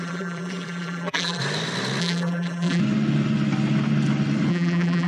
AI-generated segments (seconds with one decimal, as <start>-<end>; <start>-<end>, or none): 0.0-1.4; 2.0-2.8; 4.5-5.1